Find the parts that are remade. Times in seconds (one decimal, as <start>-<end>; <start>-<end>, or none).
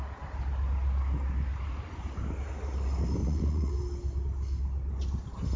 3.2-3.7